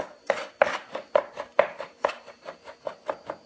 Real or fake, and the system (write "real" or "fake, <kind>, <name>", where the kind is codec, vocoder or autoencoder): real